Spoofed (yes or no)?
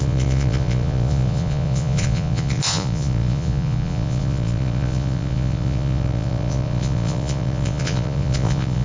yes